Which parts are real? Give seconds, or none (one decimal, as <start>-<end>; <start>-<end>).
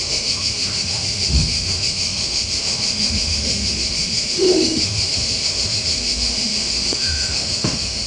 none